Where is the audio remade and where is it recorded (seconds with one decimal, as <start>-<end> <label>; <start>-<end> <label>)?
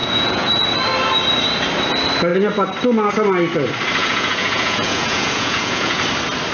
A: 0.0-0.5 remade; 0.5-4.0 recorded; 4.0-6.0 remade; 6.0-6.5 recorded